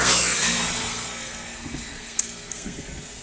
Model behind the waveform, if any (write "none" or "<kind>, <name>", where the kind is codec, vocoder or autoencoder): codec, SNAC